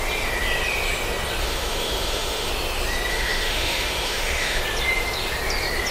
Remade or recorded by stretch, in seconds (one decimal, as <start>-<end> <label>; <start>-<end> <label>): 0.0-1.4 recorded; 1.4-2.5 remade; 2.5-3.1 recorded; 3.1-4.6 remade; 4.6-5.9 recorded